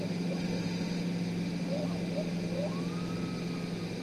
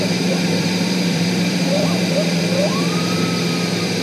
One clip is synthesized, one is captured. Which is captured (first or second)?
first